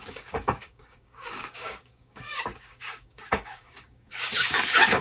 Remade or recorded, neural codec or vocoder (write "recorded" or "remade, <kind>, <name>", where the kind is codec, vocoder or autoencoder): remade, codec, DAC